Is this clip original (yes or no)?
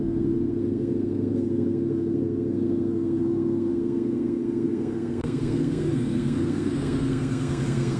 no